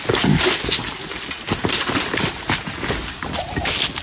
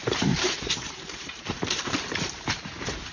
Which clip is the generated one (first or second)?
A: second